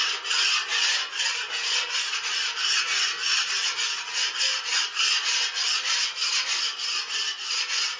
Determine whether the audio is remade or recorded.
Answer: recorded